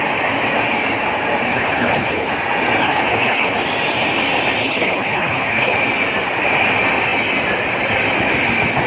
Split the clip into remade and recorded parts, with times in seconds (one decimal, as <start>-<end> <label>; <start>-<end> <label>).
0.0-1.5 recorded; 1.5-2.3 remade; 2.3-2.8 recorded; 2.8-3.5 remade; 3.5-4.6 recorded; 4.6-5.8 remade; 5.8-8.9 recorded